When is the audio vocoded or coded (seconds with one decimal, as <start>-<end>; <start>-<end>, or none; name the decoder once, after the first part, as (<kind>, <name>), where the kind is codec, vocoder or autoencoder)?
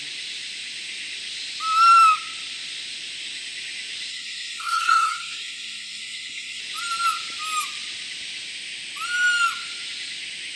4.1-6.6 (codec, SNAC)